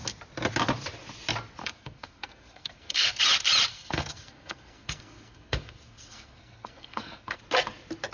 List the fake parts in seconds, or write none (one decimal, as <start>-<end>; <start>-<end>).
1.6-3.2; 3.7-7.4